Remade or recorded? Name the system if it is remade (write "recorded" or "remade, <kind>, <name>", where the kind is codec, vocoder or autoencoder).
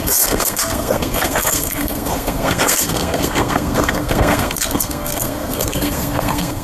remade, codec, SNAC